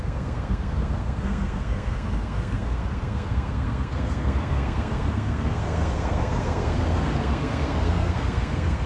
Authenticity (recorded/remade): remade